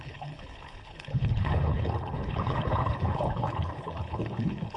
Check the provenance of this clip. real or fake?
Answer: fake